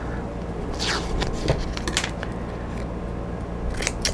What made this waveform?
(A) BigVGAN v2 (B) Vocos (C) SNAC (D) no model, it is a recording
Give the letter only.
D